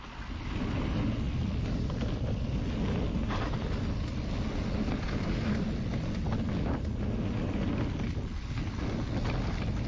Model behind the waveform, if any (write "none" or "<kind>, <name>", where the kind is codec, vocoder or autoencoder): none